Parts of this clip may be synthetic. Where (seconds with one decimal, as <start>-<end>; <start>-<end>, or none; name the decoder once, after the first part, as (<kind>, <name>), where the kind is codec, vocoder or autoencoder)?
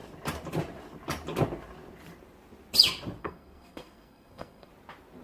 3.2-4.7 (codec, SNAC)